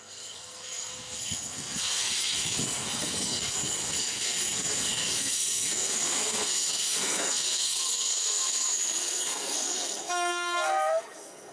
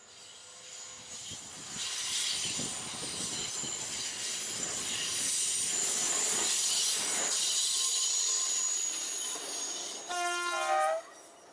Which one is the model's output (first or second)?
first